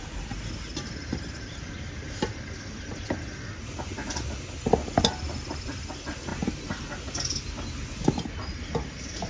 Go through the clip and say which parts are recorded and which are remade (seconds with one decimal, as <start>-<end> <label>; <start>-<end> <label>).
0.0-9.3 recorded